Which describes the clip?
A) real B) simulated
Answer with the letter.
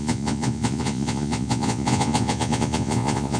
B